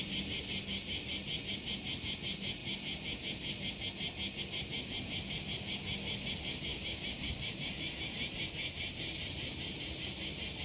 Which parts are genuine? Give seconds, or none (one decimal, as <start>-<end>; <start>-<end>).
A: 0.0-10.6